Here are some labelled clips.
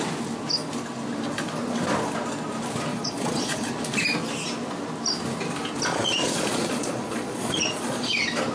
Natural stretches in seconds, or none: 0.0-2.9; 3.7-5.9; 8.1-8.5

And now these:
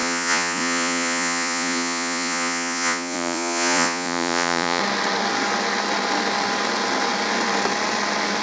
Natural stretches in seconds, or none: 4.8-8.4

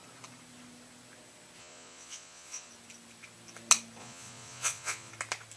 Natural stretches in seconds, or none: 0.0-1.6; 2.7-4.0; 5.1-5.6